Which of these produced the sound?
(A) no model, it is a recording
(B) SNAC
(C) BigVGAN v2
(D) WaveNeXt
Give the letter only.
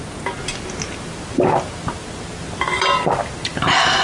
A